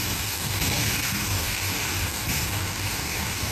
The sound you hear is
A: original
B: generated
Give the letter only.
B